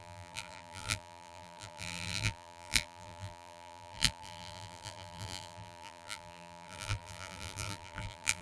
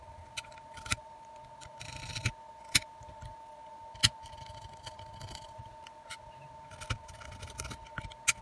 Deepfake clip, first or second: first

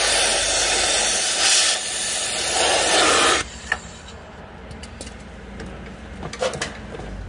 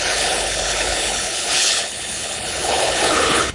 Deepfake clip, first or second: second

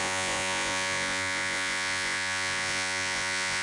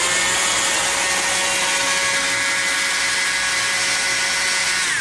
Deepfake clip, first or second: first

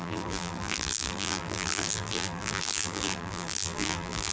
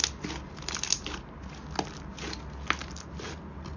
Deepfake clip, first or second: first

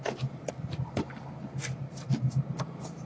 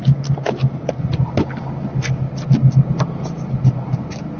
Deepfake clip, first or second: first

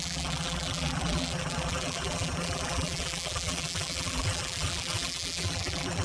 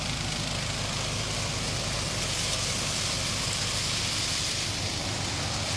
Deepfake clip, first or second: first